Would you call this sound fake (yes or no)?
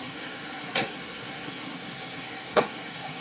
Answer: yes